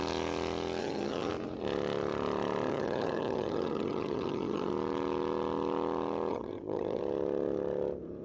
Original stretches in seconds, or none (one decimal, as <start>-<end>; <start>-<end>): 0.0-0.8; 1.3-2.7; 4.7-6.3; 7.0-8.2